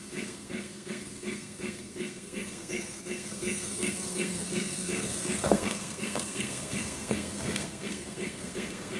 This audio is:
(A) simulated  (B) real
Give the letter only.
A